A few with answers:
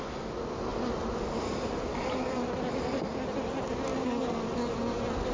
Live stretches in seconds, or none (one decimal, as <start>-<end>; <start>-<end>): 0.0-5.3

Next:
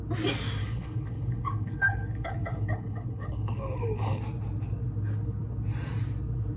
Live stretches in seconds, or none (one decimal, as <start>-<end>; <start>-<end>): 0.0-0.6; 4.2-6.6

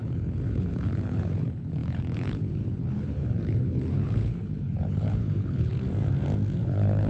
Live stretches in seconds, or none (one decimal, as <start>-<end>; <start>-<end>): 5.7-6.6

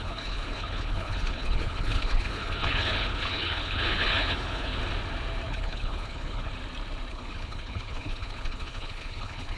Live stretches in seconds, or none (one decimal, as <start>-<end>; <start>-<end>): 4.8-5.5; 6.5-7.1

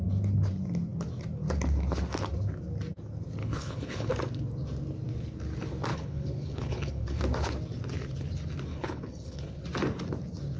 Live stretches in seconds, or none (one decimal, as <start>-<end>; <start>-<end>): 0.0-3.4; 4.1-5.9; 7.2-8.7; 9.6-10.6

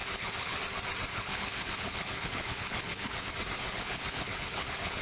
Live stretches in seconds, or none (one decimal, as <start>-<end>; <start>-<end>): 0.6-1.1; 3.3-3.7

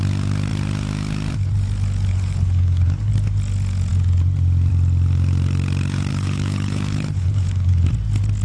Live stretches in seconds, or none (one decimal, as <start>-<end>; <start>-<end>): 0.0-2.1; 3.1-6.1; 7.9-8.4